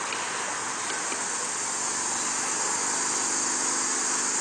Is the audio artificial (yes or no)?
no